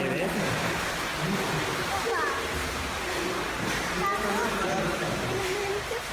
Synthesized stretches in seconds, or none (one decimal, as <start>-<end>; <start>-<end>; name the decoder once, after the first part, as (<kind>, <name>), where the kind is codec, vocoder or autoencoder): none